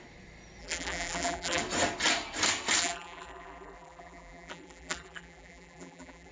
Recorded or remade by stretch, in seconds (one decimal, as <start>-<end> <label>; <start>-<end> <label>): 0.0-0.6 recorded; 0.6-1.6 remade; 1.6-2.8 recorded; 2.8-6.3 remade